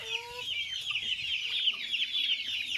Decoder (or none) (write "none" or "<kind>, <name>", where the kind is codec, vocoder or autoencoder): vocoder, BigVGAN v2